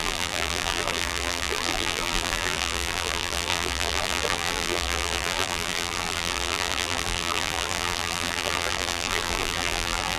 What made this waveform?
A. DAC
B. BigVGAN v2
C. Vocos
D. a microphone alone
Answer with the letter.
B